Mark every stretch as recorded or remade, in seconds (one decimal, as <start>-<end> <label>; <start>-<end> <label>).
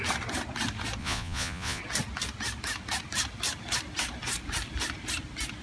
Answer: 0.0-1.0 recorded; 1.0-1.8 remade; 1.8-5.6 recorded